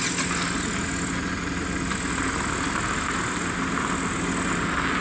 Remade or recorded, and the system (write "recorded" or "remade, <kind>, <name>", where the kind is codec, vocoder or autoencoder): recorded